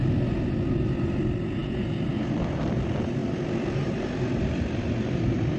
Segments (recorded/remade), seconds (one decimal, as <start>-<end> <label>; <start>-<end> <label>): 0.0-5.6 recorded